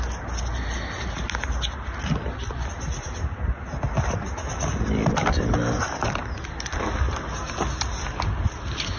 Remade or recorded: recorded